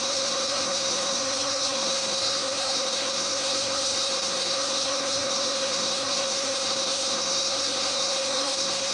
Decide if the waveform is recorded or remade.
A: remade